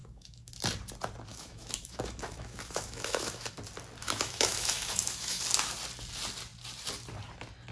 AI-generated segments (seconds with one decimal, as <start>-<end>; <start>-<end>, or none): 0.0-0.5; 1.3-3.5; 4.0-5.4